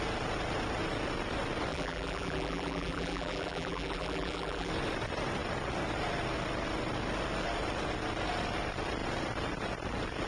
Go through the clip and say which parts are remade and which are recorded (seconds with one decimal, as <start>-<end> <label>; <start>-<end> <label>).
0.0-1.7 recorded; 1.7-4.7 remade; 4.7-10.3 recorded